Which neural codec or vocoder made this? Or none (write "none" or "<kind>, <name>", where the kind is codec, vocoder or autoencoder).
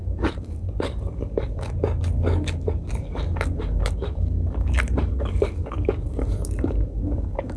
codec, DAC